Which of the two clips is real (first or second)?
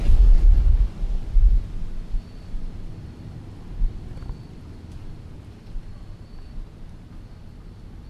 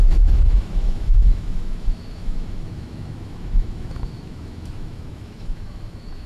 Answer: first